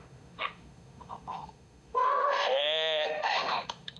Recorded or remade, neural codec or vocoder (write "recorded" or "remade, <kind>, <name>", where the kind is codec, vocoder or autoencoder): remade, autoencoder, DAC-VAE